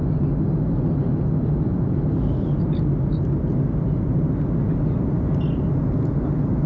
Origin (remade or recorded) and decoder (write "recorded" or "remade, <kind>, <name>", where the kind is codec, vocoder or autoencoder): recorded